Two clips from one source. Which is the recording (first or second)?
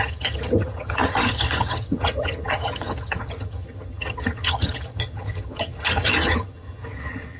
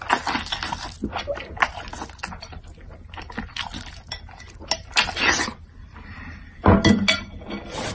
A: second